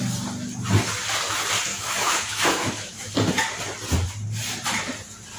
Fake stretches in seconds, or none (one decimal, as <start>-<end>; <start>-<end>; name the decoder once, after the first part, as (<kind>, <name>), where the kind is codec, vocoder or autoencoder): 1.7-3.1 (autoencoder, DAC-VAE)